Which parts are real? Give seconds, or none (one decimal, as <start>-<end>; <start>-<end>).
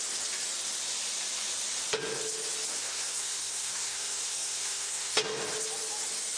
0.0-2.8; 5.2-6.4